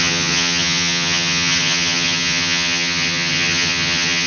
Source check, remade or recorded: remade